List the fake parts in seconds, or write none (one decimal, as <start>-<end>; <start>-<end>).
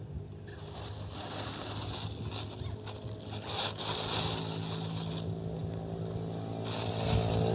none